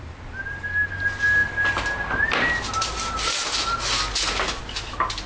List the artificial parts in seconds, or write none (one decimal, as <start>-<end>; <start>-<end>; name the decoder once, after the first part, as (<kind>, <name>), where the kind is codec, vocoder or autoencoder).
none